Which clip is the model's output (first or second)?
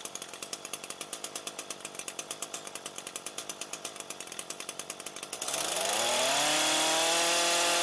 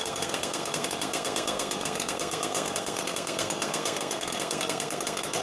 second